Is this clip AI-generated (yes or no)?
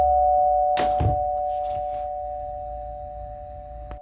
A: no